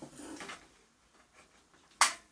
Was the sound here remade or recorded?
recorded